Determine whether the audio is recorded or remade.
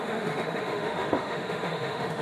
remade